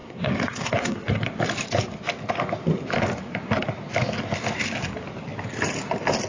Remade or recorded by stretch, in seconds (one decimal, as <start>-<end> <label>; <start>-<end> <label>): 0.0-1.2 remade; 1.2-6.3 recorded